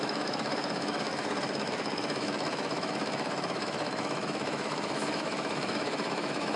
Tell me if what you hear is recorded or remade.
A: remade